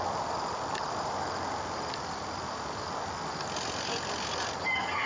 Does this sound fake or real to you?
real